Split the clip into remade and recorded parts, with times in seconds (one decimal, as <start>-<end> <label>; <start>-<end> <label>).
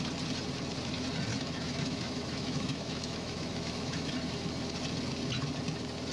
0.0-1.3 recorded; 1.3-4.1 remade; 4.1-6.1 recorded